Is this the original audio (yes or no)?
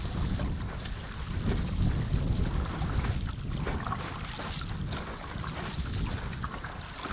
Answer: yes